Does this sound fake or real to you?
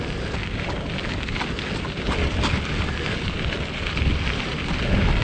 real